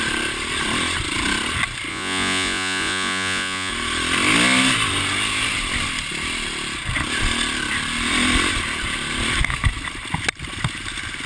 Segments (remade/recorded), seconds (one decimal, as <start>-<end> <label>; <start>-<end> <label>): 0.0-1.9 recorded; 1.9-3.7 remade; 3.7-11.3 recorded